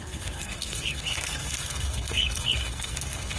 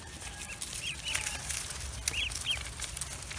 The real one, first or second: second